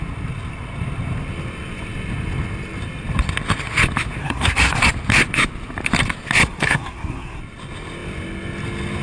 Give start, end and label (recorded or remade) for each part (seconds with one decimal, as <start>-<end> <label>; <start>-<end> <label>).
0.0-4.2 recorded; 4.2-4.9 remade; 4.9-6.4 recorded; 6.4-7.4 remade; 7.4-9.0 recorded